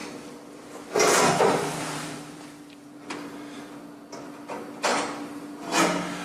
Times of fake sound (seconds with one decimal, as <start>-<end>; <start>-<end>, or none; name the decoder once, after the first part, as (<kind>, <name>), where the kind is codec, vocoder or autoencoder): 0.0-3.7 (vocoder, BigVGAN v2)